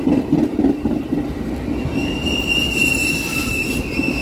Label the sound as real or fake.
real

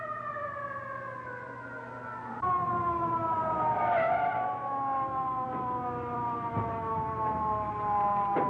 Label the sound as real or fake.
real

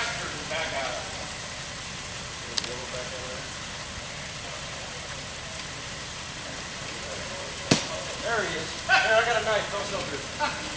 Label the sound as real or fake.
real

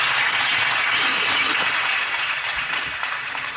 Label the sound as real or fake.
fake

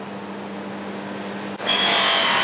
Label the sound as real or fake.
real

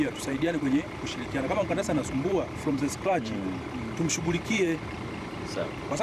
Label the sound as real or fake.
fake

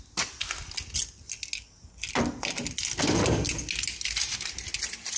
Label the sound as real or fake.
real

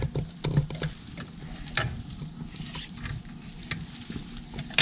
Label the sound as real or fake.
real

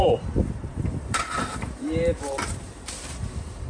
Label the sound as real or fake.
fake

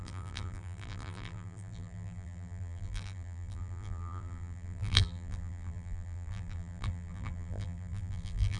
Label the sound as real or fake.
fake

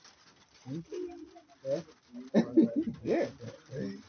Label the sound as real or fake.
real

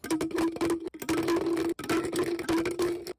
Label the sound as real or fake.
real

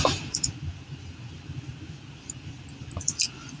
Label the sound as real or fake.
fake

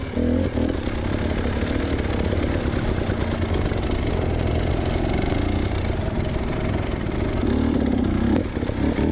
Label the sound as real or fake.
real